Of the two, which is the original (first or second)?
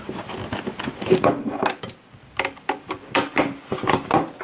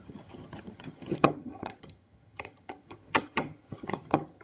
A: first